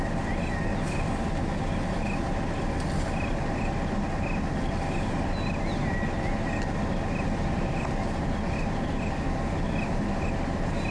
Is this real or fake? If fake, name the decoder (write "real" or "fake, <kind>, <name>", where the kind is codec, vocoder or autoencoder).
real